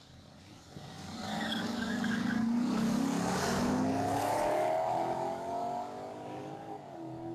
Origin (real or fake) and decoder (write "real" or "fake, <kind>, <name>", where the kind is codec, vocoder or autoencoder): fake, codec, DAC